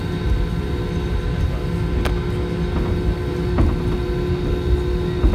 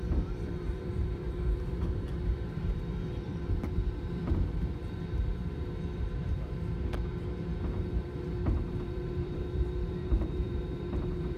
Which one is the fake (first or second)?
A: second